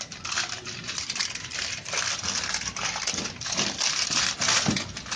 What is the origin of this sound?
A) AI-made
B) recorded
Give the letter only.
A